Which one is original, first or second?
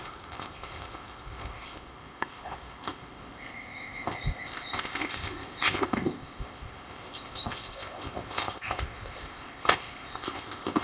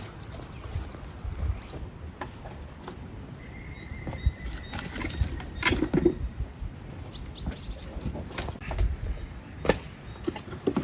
second